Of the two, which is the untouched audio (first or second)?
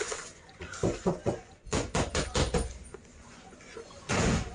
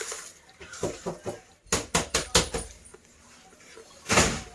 second